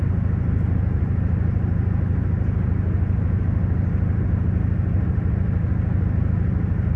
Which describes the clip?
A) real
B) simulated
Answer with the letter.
A